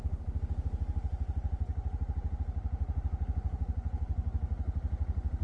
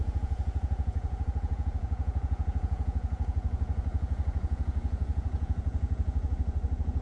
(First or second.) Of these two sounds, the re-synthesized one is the second